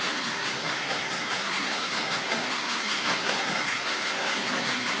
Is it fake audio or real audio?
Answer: fake